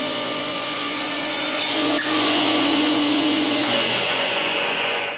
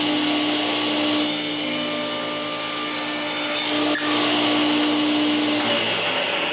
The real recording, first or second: second